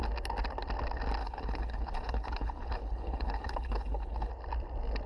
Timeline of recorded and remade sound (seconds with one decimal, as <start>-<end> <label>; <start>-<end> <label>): 0.0-1.2 recorded; 1.2-4.3 remade; 4.3-5.1 recorded